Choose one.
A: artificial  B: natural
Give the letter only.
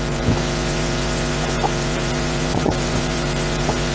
A